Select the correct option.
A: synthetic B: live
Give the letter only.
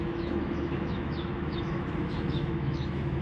A